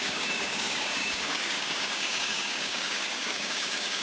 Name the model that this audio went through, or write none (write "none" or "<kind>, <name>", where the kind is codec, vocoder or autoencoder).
codec, DAC